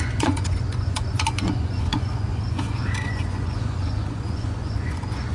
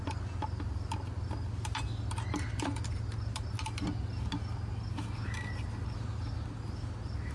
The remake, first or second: first